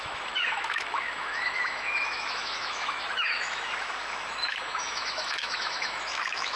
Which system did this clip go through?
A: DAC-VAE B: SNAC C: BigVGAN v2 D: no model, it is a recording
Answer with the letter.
A